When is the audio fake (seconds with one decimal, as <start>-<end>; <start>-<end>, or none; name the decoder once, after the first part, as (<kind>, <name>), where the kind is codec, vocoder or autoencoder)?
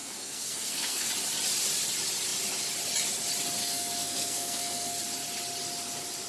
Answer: 0.0-1.1 (codec, SNAC); 3.6-5.0